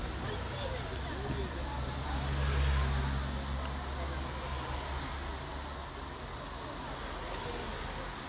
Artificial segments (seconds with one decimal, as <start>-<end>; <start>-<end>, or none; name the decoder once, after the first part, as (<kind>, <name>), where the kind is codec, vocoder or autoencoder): none